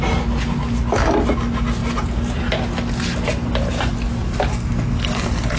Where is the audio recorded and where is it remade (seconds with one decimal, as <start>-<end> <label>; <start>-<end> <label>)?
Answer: 0.0-4.5 recorded; 4.5-5.6 remade